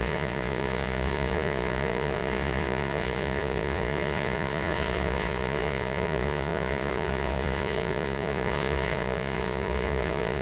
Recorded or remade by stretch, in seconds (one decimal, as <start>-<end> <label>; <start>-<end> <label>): 0.0-10.4 remade